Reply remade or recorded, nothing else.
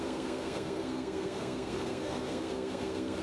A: remade